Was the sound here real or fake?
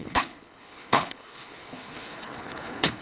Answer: fake